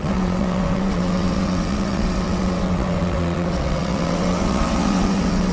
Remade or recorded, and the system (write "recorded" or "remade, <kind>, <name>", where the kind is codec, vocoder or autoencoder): remade, vocoder, WaveNeXt